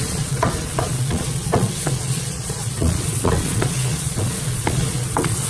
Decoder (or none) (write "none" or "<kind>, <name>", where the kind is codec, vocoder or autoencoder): vocoder, Vocos